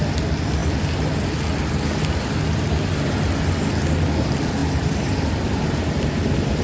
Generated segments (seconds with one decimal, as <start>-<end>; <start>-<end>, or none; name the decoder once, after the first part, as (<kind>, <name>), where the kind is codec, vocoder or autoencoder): 4.6-6.6 (vocoder, BigVGAN v2)